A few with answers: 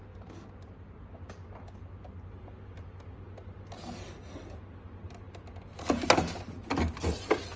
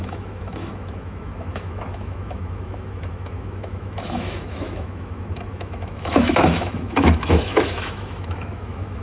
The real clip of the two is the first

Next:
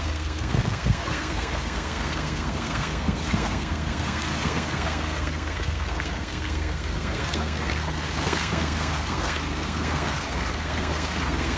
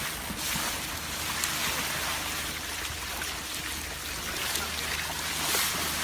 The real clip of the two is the second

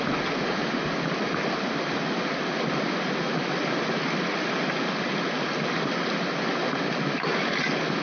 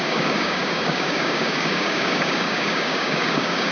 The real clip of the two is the first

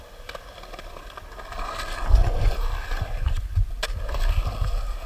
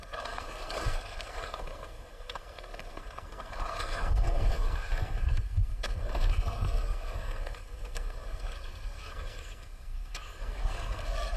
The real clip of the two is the first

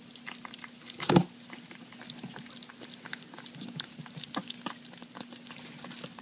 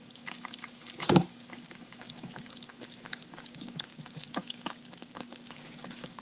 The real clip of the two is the first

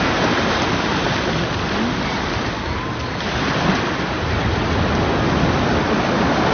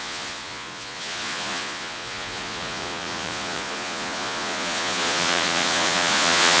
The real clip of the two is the first